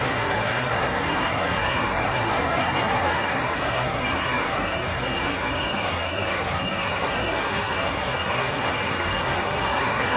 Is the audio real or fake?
fake